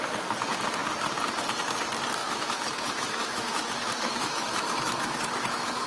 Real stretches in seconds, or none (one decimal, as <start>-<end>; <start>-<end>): 0.0-2.2

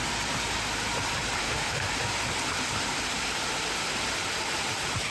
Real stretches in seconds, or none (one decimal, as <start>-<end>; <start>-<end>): 0.0-1.4; 1.9-5.1

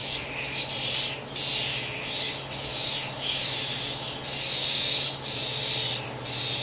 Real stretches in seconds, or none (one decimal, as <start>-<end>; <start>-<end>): 0.6-1.7; 5.6-6.6

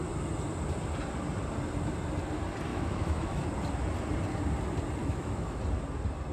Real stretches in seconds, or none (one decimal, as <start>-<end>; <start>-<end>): 0.0-2.7; 3.4-5.0; 5.6-6.3

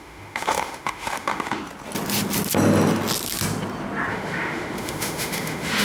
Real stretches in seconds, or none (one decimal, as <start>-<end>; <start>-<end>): 1.6-4.1

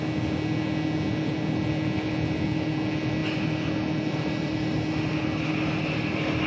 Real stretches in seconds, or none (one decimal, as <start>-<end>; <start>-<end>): 0.0-6.5

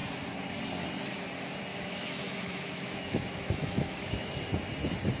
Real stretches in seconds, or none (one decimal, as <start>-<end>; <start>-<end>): 0.0-1.7; 4.3-5.2